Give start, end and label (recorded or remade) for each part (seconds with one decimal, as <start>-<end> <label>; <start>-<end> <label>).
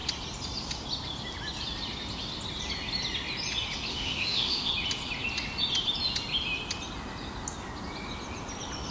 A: 0.0-3.9 recorded; 3.9-4.7 remade; 4.7-8.9 recorded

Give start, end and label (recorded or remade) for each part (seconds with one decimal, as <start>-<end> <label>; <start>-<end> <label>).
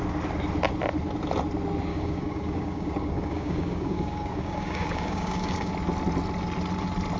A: 0.0-1.9 recorded; 1.9-5.7 remade; 5.7-7.2 recorded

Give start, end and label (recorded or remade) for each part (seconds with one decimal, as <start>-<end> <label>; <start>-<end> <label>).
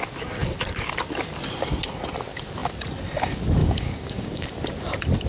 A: 0.0-3.6 recorded; 3.6-4.5 remade; 4.5-5.3 recorded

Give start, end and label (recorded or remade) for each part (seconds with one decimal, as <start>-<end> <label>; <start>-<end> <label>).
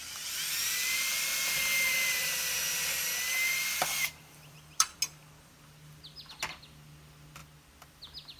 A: 0.0-0.6 recorded; 0.6-5.0 remade; 5.0-7.4 recorded; 7.4-8.0 remade; 8.0-8.4 recorded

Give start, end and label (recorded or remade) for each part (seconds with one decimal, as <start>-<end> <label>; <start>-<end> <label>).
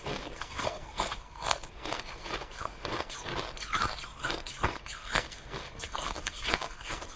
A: 0.0-3.3 remade; 3.3-4.2 recorded; 4.2-7.2 remade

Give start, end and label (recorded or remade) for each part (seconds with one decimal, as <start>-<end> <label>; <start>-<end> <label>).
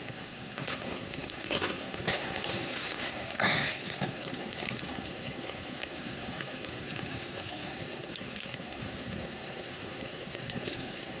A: 0.0-11.2 remade